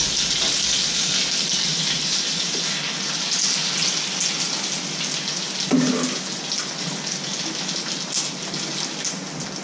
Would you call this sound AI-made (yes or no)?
no